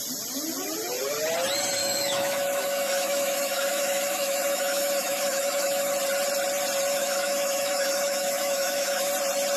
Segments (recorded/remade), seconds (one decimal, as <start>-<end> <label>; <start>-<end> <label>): 0.0-1.8 recorded; 1.8-5.9 remade; 5.9-6.9 recorded; 6.9-9.1 remade; 9.1-9.6 recorded

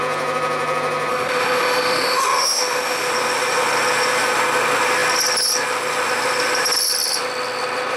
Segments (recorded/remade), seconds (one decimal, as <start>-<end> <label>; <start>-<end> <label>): 0.0-1.1 recorded; 1.1-3.1 remade; 3.1-8.0 recorded